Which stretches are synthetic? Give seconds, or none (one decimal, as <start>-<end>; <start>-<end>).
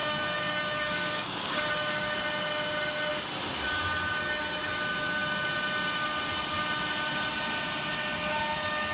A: 0.0-2.2